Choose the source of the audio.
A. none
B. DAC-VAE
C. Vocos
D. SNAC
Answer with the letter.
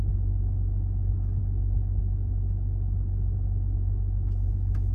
A